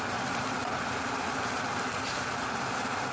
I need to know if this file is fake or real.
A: fake